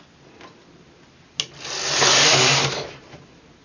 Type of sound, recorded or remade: recorded